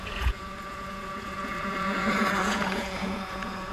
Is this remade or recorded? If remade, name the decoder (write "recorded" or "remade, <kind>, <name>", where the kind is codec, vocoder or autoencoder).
remade, vocoder, Vocos